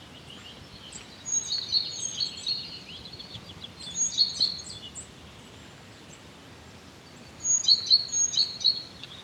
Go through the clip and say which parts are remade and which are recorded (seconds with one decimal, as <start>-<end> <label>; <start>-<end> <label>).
0.0-2.4 recorded; 2.4-3.2 remade; 3.2-9.2 recorded